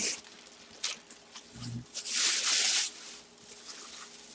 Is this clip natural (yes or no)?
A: yes